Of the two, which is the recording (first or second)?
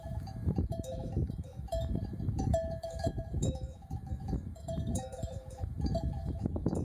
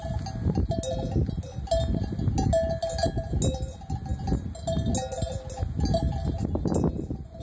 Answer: second